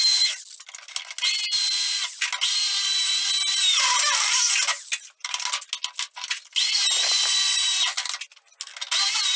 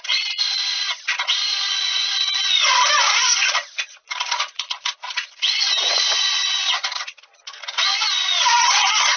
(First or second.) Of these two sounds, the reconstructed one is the second